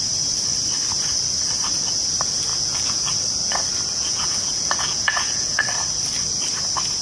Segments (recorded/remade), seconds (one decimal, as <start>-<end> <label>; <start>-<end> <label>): 0.0-2.5 recorded; 2.5-3.0 remade; 3.0-3.9 recorded; 3.9-5.6 remade; 5.6-7.0 recorded